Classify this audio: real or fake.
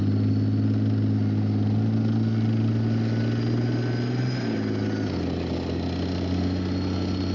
real